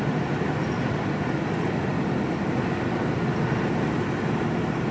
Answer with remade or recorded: recorded